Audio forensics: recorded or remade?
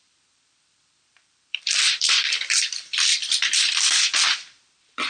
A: remade